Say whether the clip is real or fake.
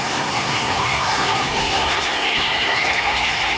fake